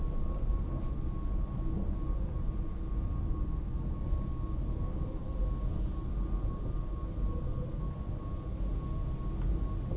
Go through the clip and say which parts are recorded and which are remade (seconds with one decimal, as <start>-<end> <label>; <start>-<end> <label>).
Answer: 0.0-10.0 recorded